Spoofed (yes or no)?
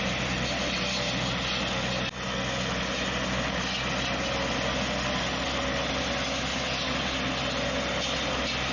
no